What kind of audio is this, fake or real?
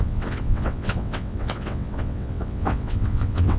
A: fake